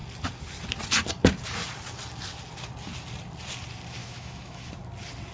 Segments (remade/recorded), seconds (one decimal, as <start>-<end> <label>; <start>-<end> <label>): 0.0-4.0 recorded; 4.0-4.7 remade; 4.7-5.3 recorded